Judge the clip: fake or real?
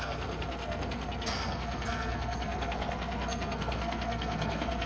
fake